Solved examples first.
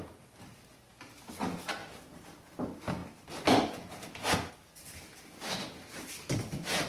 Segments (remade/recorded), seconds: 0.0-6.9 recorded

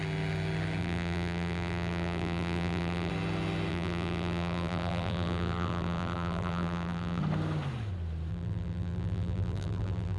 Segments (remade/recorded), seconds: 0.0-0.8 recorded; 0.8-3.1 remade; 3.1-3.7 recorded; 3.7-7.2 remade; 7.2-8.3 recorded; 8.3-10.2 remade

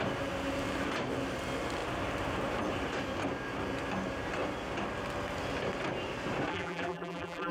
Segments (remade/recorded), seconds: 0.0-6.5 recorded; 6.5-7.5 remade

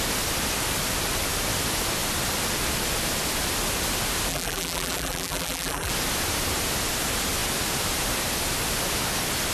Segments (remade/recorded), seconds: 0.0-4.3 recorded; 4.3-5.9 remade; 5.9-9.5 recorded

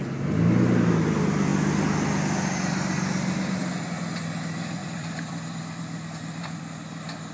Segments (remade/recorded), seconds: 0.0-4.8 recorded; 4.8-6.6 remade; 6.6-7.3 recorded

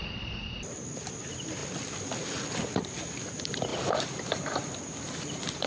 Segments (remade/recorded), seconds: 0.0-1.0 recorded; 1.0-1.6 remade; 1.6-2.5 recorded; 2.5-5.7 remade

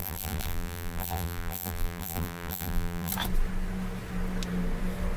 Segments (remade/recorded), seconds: 0.0-3.1 remade; 3.1-5.2 recorded

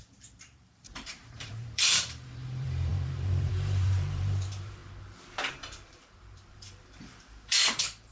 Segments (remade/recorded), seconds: 0.0-4.8 remade; 4.8-5.5 recorded; 5.5-8.1 remade